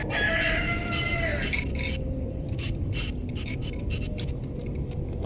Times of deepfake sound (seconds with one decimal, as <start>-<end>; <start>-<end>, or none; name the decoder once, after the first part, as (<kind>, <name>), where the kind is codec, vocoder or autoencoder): none

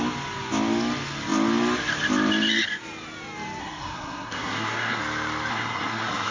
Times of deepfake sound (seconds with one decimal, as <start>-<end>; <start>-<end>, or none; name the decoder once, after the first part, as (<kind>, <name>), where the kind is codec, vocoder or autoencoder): 3.6-5.0 (codec, SNAC); 5.5-6.3

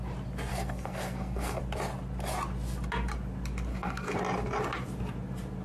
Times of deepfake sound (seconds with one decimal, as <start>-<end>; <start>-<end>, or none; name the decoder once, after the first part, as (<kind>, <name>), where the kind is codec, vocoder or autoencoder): 0.5-1.6 (codec, SNAC); 3.7-4.2

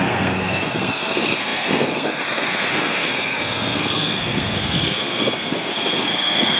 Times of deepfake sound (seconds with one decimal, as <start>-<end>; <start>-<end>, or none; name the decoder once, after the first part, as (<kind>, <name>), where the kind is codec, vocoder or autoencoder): 0.0-6.6 (codec, SNAC)

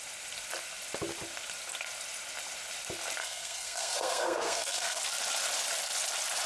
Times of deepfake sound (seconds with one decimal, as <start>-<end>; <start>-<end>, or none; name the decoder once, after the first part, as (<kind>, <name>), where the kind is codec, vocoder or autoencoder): 3.2-5.0 (codec, SNAC)

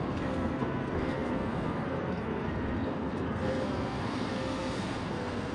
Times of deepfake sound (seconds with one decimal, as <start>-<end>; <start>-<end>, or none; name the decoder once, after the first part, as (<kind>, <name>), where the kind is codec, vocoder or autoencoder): 0.0-5.5 (codec, SNAC)

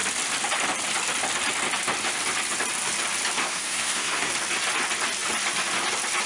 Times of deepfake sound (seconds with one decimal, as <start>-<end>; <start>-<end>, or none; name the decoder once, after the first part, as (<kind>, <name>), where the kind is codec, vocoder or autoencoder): 3.4-4.3 (codec, SNAC)